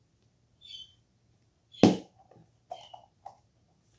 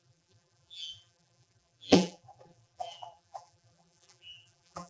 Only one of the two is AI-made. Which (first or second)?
second